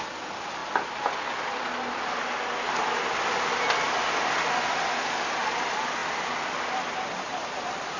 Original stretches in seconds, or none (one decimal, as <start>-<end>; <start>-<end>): 0.0-8.0